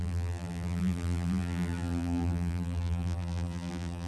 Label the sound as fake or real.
fake